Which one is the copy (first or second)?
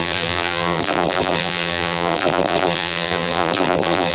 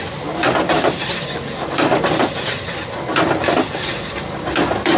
first